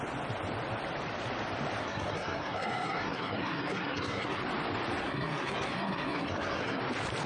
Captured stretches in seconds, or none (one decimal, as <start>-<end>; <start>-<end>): 0.0-1.8; 4.4-5.0; 6.8-7.3